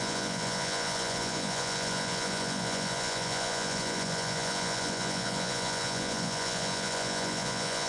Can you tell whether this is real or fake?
fake